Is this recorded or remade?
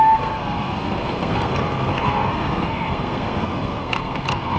remade